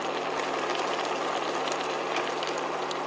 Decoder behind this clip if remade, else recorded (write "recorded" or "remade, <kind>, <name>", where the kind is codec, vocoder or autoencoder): recorded